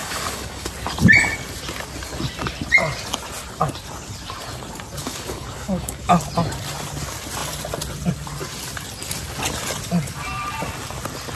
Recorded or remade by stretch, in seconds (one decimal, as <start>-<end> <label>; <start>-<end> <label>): 0.0-0.7 remade; 0.7-5.0 recorded; 5.0-6.1 remade; 6.1-11.4 recorded